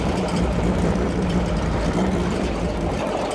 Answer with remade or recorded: remade